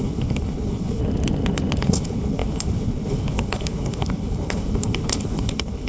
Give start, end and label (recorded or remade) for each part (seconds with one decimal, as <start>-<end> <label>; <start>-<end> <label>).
0.0-1.0 remade; 1.0-1.8 recorded; 1.8-5.9 remade